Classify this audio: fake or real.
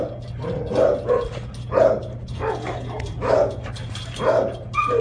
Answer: real